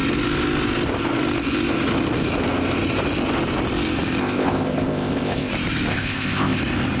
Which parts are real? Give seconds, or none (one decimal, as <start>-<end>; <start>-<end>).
0.0-4.2; 5.5-5.9; 6.6-7.0